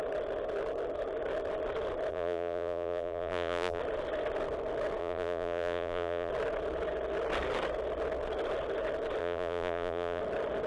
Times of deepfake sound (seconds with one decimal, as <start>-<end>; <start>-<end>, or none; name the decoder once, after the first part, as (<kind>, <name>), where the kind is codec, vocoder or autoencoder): 2.1-3.8 (vocoder, BigVGAN v2); 5.0-6.3; 9.2-10.2